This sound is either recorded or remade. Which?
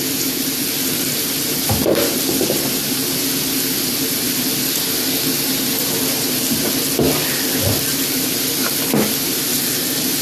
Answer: recorded